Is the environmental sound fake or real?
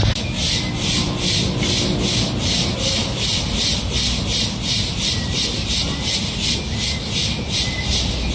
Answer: real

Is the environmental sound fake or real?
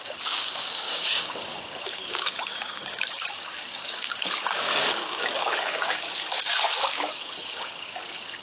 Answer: fake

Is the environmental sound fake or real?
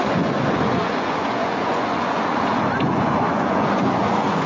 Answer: fake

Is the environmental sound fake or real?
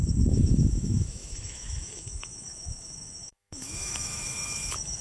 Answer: fake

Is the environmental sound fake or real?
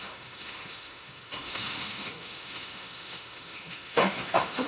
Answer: fake